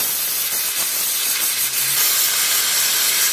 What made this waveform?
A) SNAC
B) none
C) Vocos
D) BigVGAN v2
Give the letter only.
B